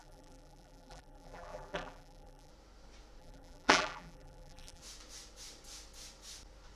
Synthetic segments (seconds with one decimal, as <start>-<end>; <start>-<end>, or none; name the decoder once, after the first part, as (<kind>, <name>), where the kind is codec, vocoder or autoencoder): 0.0-2.5 (vocoder, BigVGAN v2); 3.2-4.8